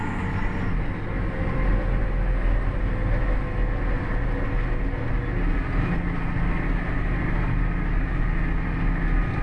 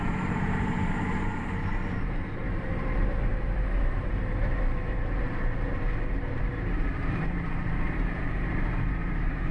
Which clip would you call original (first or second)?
first